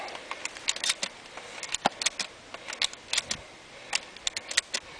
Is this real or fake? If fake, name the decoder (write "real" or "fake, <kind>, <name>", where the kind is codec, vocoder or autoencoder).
real